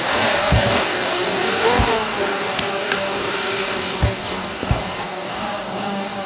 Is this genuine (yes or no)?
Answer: no